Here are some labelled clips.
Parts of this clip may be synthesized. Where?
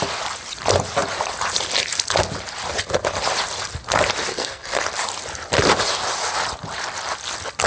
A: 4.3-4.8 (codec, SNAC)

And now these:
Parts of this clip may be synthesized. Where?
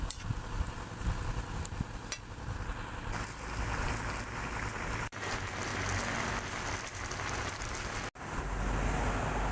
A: none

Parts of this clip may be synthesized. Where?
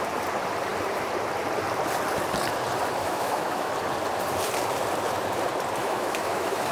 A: 3.0-3.7 (autoencoder, DAC-VAE); 5.8-6.7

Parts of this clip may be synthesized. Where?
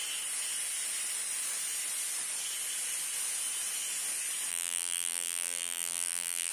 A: 4.5-6.5 (vocoder, BigVGAN v2)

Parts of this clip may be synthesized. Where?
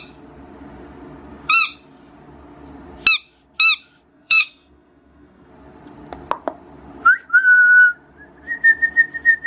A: 4.1-5.5 (codec, SNAC)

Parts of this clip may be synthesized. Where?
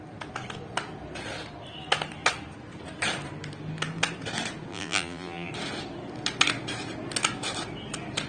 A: 4.7-5.5 (vocoder, BigVGAN v2)